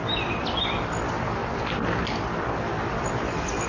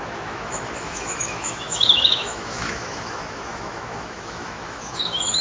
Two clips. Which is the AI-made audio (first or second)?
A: second